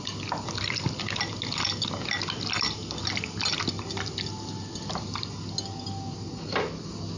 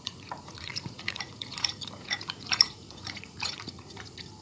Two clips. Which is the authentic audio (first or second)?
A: first